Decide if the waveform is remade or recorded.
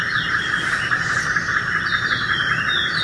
recorded